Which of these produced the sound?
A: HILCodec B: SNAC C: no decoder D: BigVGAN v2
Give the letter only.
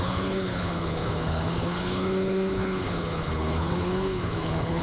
A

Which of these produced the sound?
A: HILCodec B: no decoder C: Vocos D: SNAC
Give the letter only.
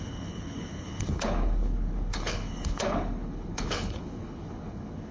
A